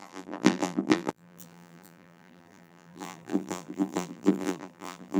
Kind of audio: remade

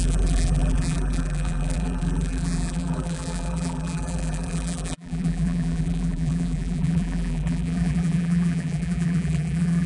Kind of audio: remade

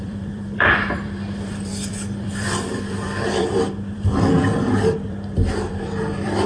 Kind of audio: remade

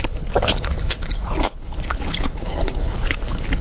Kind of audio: remade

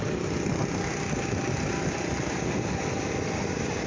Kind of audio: recorded